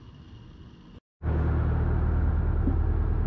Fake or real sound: real